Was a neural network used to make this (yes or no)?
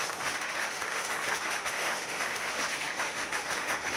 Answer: yes